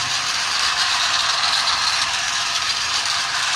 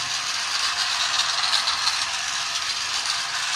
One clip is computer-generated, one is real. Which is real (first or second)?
second